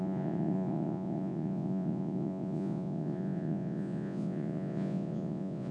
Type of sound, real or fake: fake